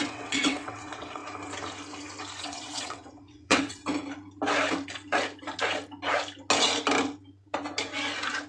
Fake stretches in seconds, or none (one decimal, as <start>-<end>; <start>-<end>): 0.0-1.2; 2.4-3.8